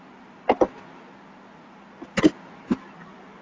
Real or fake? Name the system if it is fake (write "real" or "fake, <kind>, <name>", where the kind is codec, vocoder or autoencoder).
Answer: real